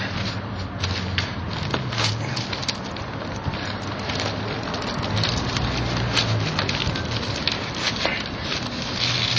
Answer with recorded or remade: recorded